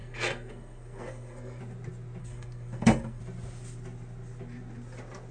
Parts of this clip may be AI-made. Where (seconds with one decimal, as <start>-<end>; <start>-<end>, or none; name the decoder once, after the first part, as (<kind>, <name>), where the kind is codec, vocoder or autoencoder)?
0.0-1.6 (codec, SNAC); 2.2-3.2